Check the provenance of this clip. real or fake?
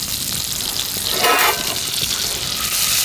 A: real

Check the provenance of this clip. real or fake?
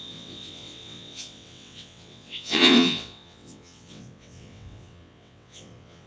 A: fake